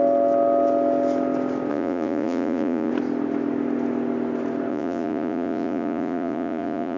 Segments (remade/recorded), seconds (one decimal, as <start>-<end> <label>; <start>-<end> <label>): 0.0-1.7 recorded; 1.7-2.9 remade; 2.9-4.7 recorded; 4.7-7.0 remade